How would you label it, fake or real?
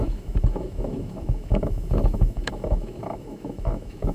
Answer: fake